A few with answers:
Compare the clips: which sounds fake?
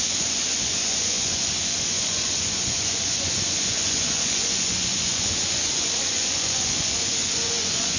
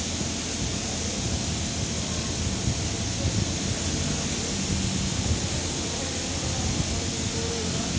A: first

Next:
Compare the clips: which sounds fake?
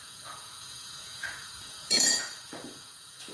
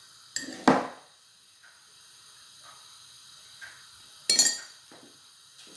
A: first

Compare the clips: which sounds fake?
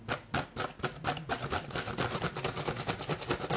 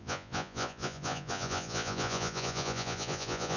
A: second